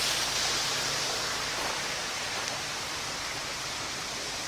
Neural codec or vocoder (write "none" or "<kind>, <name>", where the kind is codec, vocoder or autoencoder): none